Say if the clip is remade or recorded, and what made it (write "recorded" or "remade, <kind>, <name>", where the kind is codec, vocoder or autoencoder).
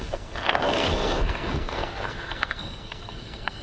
remade, codec, SNAC